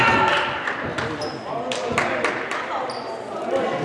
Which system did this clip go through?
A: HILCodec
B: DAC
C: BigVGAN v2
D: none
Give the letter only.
D